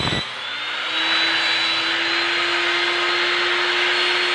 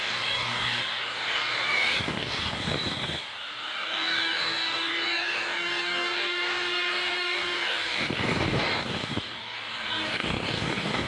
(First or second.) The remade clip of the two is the second